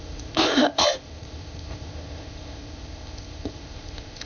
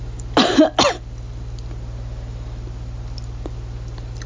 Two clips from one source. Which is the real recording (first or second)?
second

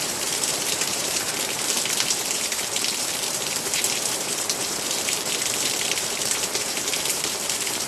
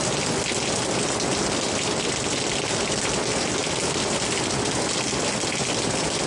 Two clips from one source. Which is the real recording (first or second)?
second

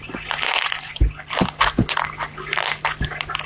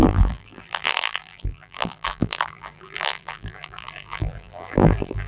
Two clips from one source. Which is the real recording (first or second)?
first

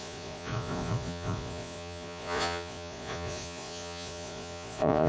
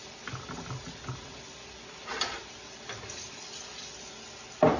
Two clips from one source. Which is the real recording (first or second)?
second